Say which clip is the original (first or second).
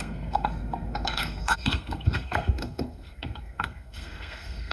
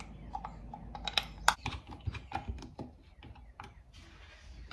second